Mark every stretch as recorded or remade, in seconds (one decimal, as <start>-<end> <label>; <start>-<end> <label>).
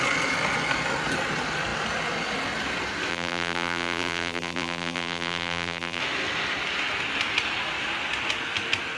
0.0-3.1 recorded; 3.1-6.0 remade; 6.0-9.0 recorded